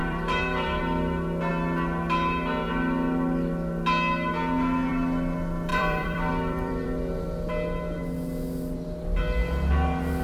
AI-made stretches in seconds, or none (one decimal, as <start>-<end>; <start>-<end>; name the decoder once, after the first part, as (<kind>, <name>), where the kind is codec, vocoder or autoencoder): 0.0-0.8 (vocoder, BigVGAN v2); 5.7-7.5